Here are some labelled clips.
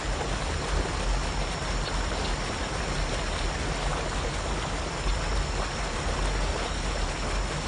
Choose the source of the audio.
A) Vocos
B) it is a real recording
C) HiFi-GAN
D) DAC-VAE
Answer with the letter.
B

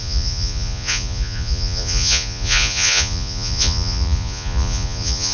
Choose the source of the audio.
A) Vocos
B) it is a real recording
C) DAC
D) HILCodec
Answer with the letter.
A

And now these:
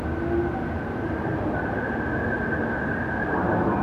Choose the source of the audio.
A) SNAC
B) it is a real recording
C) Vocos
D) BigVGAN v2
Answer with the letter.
B